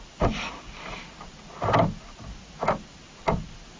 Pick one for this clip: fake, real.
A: real